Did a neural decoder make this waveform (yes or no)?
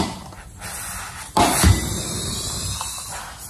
no